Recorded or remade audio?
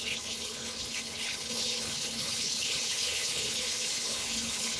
remade